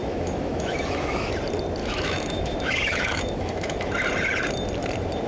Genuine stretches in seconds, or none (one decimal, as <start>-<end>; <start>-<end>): 1.3-1.8; 3.9-5.3